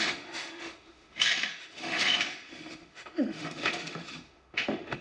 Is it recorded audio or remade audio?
remade